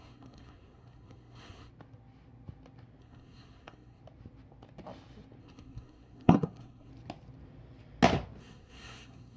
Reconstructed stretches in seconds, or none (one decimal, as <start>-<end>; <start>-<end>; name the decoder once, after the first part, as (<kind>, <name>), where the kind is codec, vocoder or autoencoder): 0.0-1.7 (codec, SNAC); 3.0-4.0; 5.4-6.9; 8.4-9.4